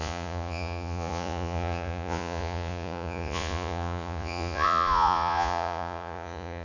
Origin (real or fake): fake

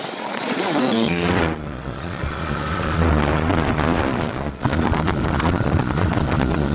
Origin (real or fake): fake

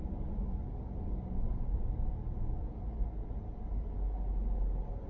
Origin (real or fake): real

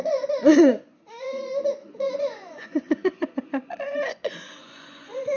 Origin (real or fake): fake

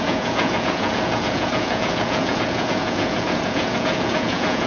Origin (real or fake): fake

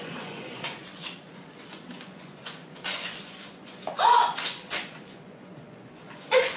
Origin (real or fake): fake